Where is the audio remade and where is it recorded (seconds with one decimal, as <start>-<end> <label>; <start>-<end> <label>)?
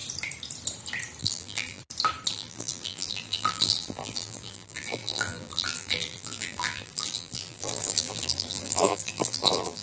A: 0.0-1.2 recorded; 1.2-1.8 remade; 1.8-2.3 recorded; 2.3-9.8 remade